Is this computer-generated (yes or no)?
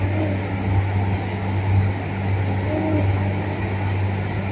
no